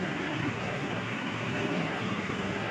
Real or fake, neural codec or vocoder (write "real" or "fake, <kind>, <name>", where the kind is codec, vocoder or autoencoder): fake, codec, SNAC